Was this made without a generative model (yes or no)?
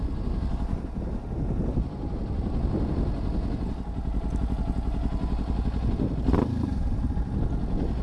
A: yes